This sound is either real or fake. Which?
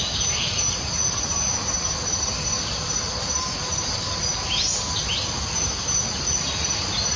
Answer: real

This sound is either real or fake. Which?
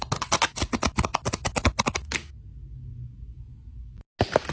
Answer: real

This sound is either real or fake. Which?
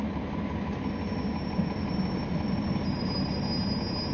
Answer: real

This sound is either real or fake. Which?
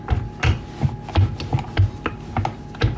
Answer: real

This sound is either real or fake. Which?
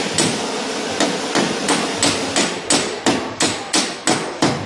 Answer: real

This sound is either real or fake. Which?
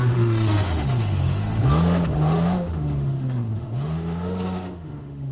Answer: fake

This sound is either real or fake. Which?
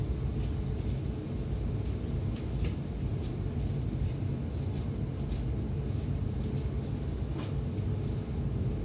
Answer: real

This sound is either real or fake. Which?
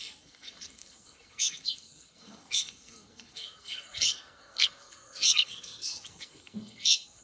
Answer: fake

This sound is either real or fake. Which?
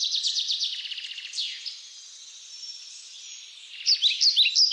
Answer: real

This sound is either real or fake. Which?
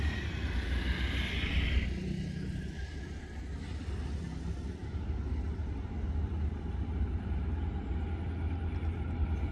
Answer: real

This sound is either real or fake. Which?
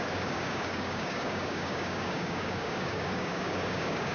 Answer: fake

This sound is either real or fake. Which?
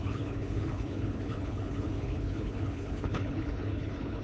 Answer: fake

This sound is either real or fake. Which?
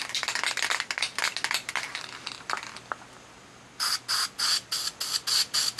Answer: real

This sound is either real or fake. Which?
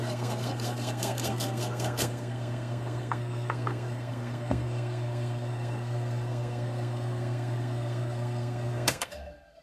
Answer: fake